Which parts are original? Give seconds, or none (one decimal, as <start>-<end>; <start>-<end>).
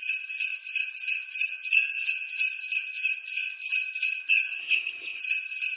0.0-4.6; 5.2-5.8